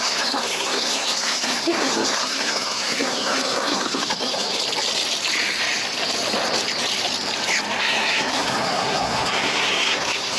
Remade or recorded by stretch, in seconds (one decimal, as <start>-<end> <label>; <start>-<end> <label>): 0.0-4.6 remade; 4.6-7.8 recorded; 7.8-10.4 remade